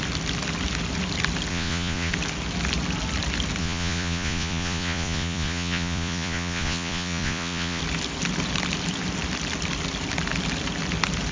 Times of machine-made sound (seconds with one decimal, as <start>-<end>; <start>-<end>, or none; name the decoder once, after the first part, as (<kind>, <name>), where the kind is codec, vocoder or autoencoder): 1.5-2.1 (vocoder, Vocos); 3.6-7.8